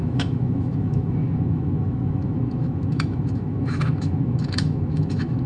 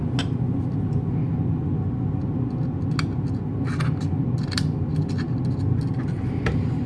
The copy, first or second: first